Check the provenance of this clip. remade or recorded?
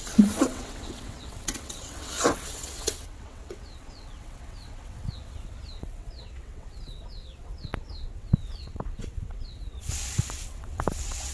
remade